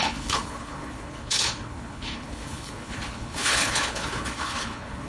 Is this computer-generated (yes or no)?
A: yes